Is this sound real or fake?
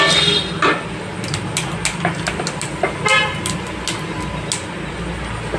real